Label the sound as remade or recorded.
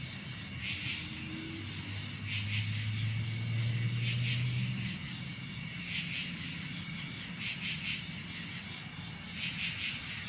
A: recorded